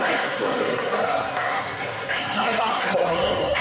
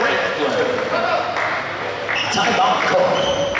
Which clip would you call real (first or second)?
second